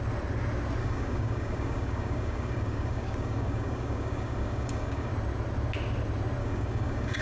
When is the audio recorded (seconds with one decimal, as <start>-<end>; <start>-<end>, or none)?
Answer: 0.0-0.8; 5.1-6.4

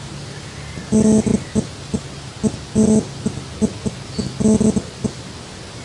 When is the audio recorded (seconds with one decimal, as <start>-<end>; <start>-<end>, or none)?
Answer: 0.0-5.8